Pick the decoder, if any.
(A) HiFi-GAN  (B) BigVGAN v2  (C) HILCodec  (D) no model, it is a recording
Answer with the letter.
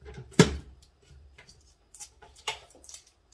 B